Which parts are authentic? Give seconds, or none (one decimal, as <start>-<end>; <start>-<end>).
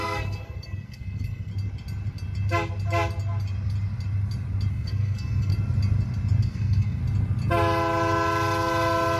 1.5-4.7; 5.5-6.4; 7.0-9.2